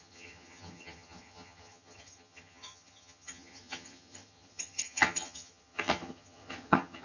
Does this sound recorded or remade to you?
remade